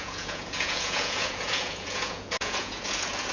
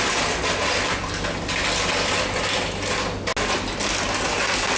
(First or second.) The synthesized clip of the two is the first